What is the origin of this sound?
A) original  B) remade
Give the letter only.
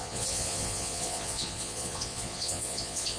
B